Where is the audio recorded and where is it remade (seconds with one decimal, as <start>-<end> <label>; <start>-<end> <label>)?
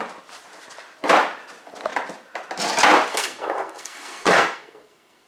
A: 0.0-3.1 recorded; 3.1-5.3 remade